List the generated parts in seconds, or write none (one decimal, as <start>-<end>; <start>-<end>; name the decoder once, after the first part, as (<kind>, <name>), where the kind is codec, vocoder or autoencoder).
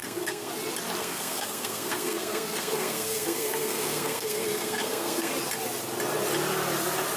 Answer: 0.0-0.5 (codec, SNAC); 1.0-5.3